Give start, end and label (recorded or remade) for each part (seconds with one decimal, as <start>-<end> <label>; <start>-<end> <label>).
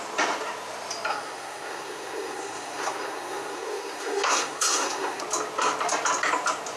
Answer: 0.0-1.1 recorded; 1.1-5.2 remade; 5.2-6.8 recorded